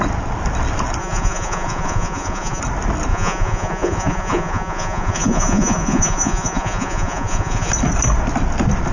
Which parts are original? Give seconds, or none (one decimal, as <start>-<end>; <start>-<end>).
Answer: 0.0-1.0; 2.6-3.1; 7.7-8.9